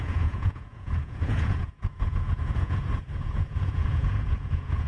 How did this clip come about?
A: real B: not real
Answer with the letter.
B